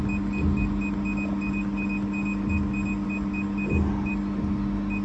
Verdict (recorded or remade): recorded